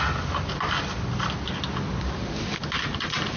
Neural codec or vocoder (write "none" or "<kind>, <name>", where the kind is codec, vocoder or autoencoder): none